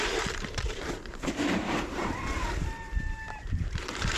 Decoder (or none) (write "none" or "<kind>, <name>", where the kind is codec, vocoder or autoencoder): vocoder, BigVGAN v2